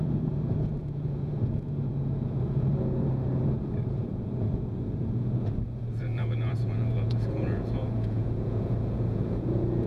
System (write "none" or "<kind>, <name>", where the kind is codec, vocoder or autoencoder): vocoder, Vocos